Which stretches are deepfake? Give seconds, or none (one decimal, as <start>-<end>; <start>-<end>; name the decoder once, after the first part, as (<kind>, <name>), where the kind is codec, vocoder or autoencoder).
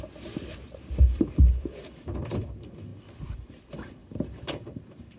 0.0-2.9 (vocoder, BigVGAN v2); 3.6-4.0